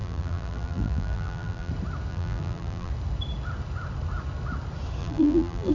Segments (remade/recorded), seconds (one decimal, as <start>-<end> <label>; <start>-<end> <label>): 0.0-1.7 remade; 1.7-2.1 recorded; 2.1-2.9 remade; 2.9-5.0 recorded; 5.0-5.7 remade